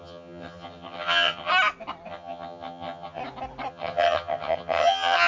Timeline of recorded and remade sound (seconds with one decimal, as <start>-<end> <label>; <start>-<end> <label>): 0.0-1.5 remade; 1.5-2.1 recorded; 2.1-3.2 remade; 3.2-3.7 recorded; 3.7-5.3 remade

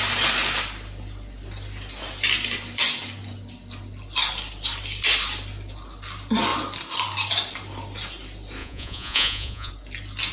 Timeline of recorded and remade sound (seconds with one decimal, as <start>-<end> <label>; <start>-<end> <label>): 0.0-8.6 recorded; 8.6-9.7 remade; 9.7-10.3 recorded

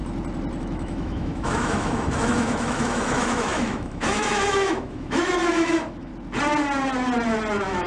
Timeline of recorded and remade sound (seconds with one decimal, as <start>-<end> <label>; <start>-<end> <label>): 0.0-0.6 recorded; 0.6-6.1 remade; 6.1-7.5 recorded; 7.5-7.9 remade

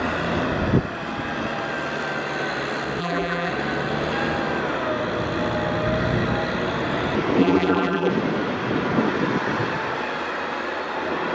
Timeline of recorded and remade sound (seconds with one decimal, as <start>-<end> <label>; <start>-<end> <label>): 0.0-3.0 recorded; 3.0-3.5 remade; 3.5-7.4 recorded; 7.4-8.1 remade; 8.1-11.3 recorded

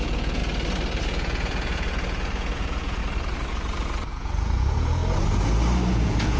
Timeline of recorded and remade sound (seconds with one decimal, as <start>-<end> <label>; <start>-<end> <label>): 0.0-0.4 remade; 0.4-1.0 recorded; 1.0-3.0 remade; 3.0-4.1 recorded; 4.1-5.0 remade; 5.0-5.9 recorded; 5.9-6.4 remade

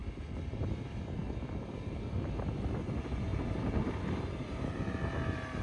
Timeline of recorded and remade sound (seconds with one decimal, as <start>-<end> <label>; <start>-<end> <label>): 0.0-3.3 recorded; 3.3-4.8 remade; 4.8-5.6 recorded

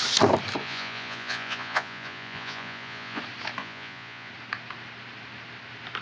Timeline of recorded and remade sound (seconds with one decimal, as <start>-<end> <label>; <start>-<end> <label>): 0.0-0.6 recorded; 0.6-3.2 remade; 3.2-3.6 recorded; 3.6-4.3 remade; 4.3-6.0 recorded

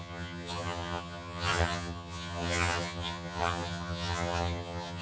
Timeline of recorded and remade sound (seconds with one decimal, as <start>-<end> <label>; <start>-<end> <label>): 0.0-5.0 remade